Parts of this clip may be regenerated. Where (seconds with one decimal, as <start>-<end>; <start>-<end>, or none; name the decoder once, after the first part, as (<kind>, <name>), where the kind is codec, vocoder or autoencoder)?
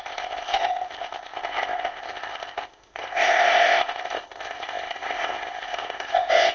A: 0.0-6.5 (codec, ZipCodec)